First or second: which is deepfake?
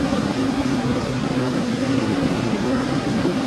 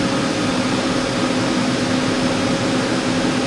first